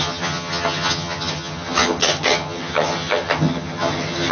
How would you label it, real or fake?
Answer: fake